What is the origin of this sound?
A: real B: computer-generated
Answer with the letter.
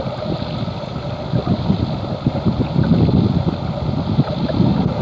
A